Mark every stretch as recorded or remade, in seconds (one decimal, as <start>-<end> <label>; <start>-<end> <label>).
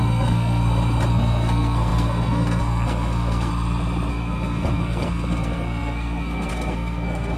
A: 0.0-0.6 remade; 0.6-1.1 recorded; 1.1-3.5 remade; 3.5-4.1 recorded; 4.1-7.4 remade